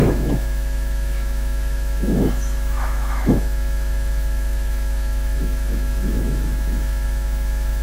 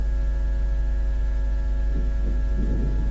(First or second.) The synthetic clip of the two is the first